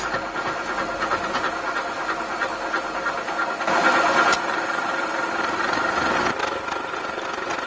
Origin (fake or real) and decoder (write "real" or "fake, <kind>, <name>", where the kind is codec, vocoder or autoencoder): real